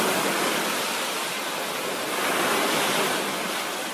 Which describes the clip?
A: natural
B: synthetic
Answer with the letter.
B